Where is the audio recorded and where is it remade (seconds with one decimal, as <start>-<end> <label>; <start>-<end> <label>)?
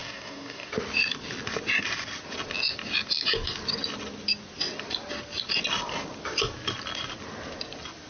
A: 0.0-0.7 remade; 0.7-8.1 recorded